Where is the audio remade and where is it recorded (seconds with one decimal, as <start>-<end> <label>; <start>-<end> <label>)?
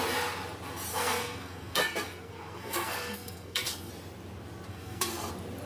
0.0-0.9 recorded; 0.9-3.9 remade; 3.9-4.7 recorded; 4.7-5.3 remade; 5.3-5.7 recorded